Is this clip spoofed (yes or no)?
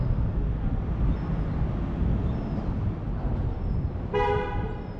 no